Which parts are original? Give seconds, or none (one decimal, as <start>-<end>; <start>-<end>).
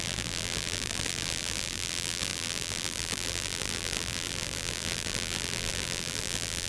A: none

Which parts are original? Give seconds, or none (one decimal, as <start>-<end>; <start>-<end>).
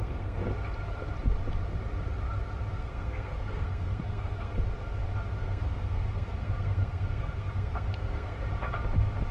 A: 0.4-2.7; 4.5-5.4; 8.4-9.3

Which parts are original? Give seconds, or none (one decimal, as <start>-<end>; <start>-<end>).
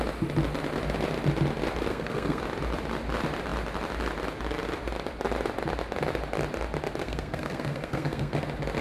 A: 0.0-1.9; 2.4-7.0; 8.4-8.8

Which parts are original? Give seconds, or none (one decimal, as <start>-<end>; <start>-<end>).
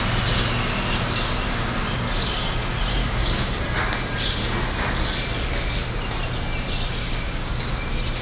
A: 0.0-3.0; 3.6-7.0; 7.6-8.2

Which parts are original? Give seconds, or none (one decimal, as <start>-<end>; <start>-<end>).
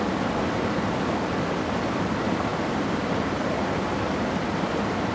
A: 0.0-5.1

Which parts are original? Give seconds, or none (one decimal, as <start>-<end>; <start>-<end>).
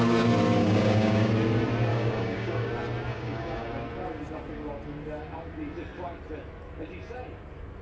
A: 0.0-0.6; 1.3-1.9; 2.7-3.1; 3.7-7.8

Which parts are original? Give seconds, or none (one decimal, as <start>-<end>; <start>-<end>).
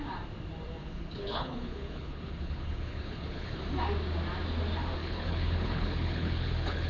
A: 0.0-0.8; 3.6-5.0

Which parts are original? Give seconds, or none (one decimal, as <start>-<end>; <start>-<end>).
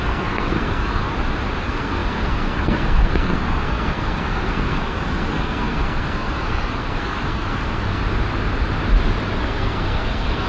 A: 1.0-1.6; 8.0-9.4